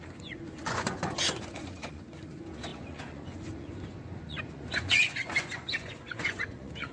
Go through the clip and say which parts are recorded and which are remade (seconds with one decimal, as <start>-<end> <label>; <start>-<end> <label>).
0.0-6.9 remade